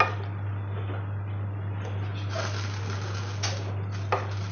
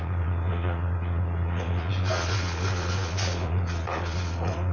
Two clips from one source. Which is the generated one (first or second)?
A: second